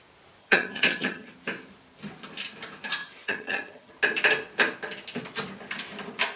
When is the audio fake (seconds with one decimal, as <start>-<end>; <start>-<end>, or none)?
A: 0.4-1.3; 3.0-3.9